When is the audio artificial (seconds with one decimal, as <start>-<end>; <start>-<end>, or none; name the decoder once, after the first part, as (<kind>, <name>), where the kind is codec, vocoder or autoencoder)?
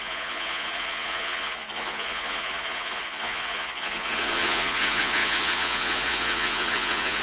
0.0-7.2 (vocoder, Vocos)